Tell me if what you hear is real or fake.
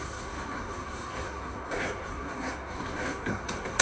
fake